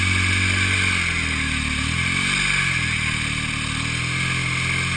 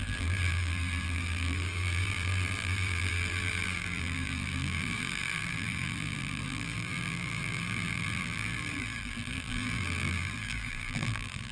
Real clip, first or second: first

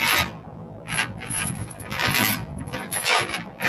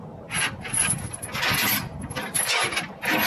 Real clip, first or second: second